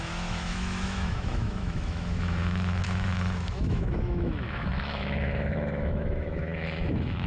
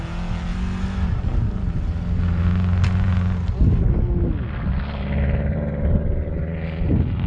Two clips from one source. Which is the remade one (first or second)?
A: first